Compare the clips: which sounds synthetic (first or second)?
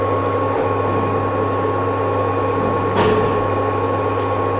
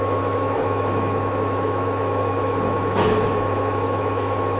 second